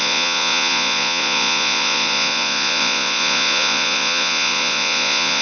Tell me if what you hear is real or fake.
fake